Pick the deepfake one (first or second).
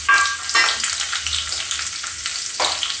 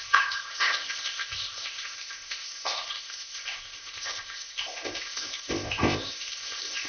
second